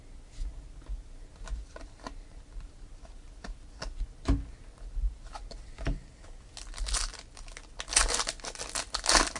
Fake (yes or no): no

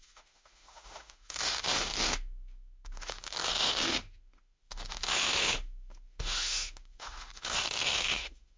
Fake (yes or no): yes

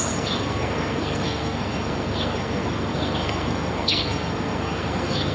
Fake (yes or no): yes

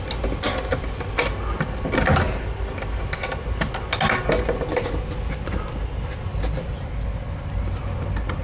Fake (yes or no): no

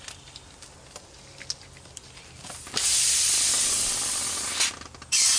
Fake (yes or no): no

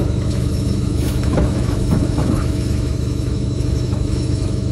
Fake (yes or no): yes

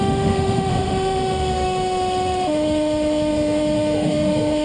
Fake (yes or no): yes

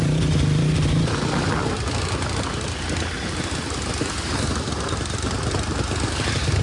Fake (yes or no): no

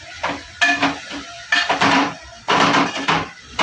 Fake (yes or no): yes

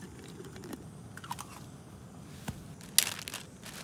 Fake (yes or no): no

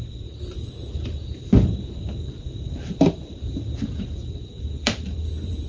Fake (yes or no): yes